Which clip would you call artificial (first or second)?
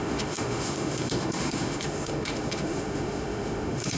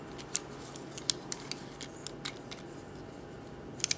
first